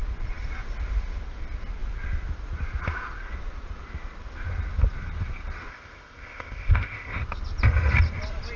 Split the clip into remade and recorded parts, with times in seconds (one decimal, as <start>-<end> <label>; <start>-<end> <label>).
0.0-5.7 recorded; 5.7-7.2 remade; 7.2-8.6 recorded